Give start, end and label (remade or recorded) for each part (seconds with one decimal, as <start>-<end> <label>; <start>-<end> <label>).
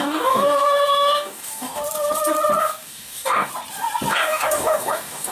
0.0-1.8 remade; 1.8-2.6 recorded; 2.6-3.5 remade; 3.5-4.1 recorded; 4.1-5.3 remade